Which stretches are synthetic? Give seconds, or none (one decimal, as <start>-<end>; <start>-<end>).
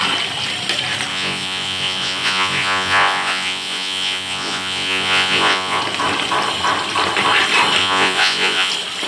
1.1-5.8; 7.8-8.7